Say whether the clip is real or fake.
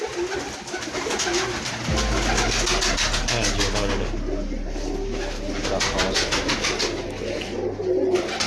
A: real